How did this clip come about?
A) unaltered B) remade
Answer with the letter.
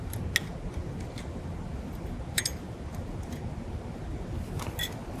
A